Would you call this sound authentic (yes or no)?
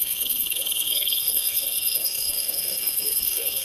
no